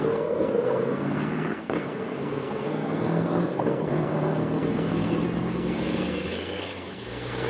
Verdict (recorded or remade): remade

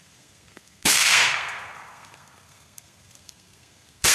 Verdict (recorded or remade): remade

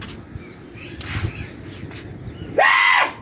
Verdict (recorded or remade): recorded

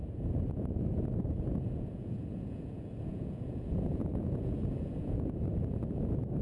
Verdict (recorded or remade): remade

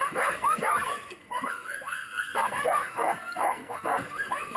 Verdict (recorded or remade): remade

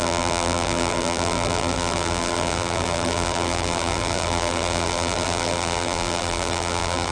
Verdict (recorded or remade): remade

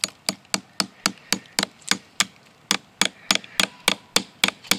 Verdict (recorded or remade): recorded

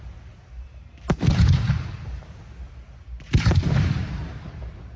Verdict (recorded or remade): recorded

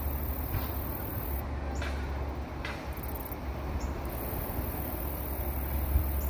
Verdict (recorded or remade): recorded